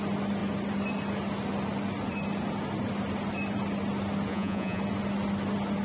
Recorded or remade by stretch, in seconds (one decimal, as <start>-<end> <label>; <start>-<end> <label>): 0.0-4.3 recorded; 4.3-4.8 remade; 4.8-5.8 recorded